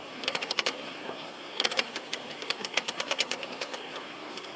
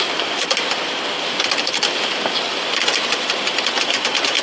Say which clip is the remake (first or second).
first